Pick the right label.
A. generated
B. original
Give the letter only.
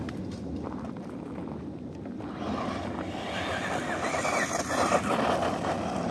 B